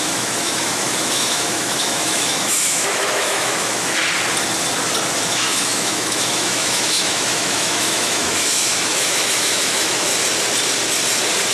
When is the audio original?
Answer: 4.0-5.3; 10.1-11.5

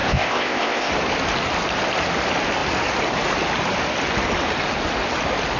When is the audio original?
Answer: 0.9-5.6

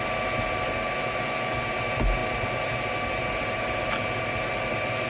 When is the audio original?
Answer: 0.0-5.1

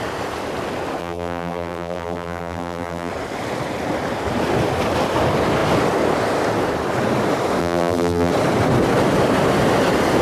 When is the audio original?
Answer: 0.0-1.0; 3.1-7.6; 8.3-10.2

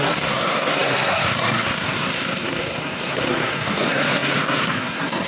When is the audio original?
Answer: none